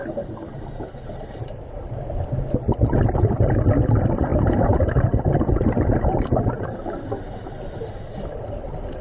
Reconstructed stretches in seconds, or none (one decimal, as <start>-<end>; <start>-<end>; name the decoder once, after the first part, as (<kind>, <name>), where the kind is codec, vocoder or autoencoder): 0.0-1.6 (vocoder, BigVGAN v2); 4.3-7.5